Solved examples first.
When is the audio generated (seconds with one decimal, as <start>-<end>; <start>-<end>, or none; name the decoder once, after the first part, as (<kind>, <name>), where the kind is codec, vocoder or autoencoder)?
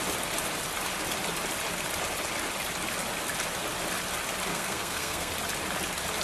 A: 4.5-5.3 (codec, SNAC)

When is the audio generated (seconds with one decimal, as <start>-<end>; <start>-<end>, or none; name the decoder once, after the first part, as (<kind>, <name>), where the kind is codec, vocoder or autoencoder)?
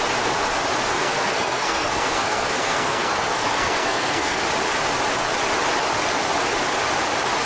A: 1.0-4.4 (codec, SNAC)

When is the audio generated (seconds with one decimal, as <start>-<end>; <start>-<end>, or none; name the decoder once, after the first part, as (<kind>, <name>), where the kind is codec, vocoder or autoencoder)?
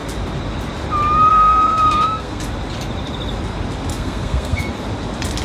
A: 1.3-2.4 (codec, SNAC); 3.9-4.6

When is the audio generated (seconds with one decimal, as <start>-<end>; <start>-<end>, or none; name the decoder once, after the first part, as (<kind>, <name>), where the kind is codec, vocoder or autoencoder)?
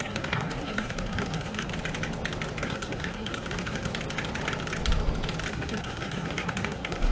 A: 0.0-1.7 (codec, SNAC); 2.6-3.9; 5.5-7.1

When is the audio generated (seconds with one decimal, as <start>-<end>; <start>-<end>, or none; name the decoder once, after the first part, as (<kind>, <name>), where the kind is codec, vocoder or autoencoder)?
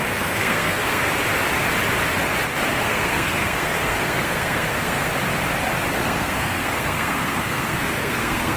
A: 0.0-1.0 (codec, SNAC); 2.7-5.1; 5.9-8.6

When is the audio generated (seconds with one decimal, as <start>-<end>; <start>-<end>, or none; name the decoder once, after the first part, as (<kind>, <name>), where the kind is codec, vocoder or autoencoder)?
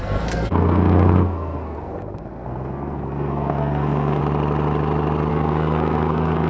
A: 0.0-4.2 (codec, SNAC); 5.3-6.5